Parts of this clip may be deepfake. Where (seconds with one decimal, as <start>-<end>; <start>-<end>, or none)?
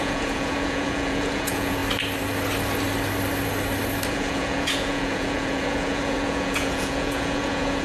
0.0-1.8; 4.1-7.8